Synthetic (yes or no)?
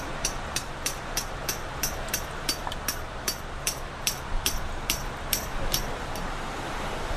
yes